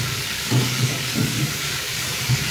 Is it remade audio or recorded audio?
remade